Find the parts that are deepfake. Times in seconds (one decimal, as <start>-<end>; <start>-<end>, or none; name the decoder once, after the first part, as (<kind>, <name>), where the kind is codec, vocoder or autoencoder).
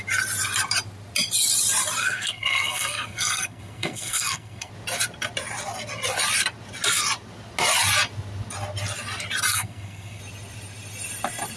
2.0-4.7 (codec, SNAC); 9.5-10.2